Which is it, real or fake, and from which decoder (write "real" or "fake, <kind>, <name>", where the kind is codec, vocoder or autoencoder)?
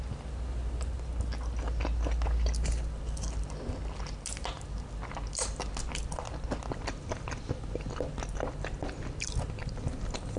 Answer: real